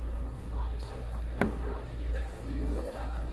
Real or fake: fake